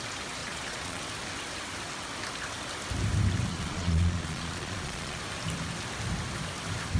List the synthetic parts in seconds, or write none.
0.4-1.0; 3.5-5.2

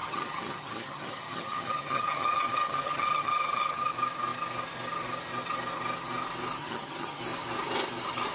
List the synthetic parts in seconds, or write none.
0.0-3.9; 6.6-7.2

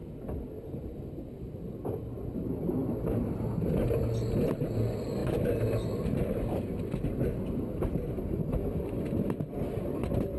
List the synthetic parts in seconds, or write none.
none

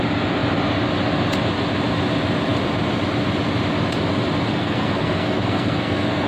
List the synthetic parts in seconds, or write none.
4.5-6.3